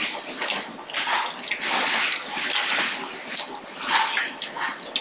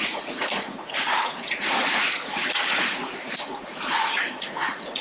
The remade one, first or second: second